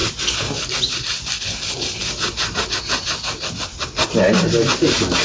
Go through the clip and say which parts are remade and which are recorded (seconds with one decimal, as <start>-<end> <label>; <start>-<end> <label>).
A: 0.0-5.2 recorded